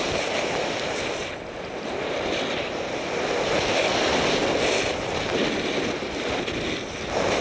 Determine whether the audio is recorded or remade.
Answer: recorded